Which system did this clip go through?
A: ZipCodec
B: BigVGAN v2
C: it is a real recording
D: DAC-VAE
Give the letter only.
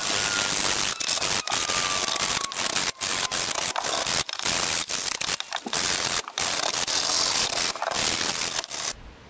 C